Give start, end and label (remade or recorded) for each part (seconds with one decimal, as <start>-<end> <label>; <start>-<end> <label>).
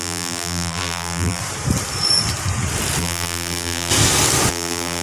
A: 0.0-1.4 remade; 1.4-3.0 recorded; 3.0-3.9 remade; 3.9-4.5 recorded; 4.5-5.0 remade